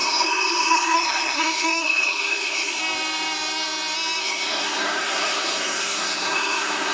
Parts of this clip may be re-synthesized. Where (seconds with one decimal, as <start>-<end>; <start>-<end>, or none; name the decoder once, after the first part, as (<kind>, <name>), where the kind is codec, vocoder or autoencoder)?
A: 0.0-2.8 (codec, SNAC); 4.2-6.9